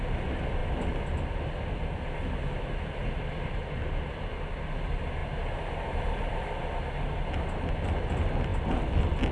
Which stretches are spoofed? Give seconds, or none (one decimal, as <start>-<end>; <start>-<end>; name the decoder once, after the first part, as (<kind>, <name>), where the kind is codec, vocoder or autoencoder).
none